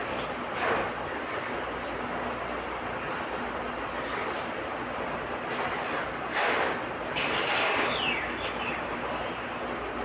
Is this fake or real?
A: real